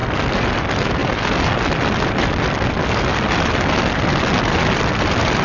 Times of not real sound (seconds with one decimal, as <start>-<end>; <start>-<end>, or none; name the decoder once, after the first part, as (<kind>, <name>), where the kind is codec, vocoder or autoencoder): 0.0-0.6 (vocoder, BigVGAN v2)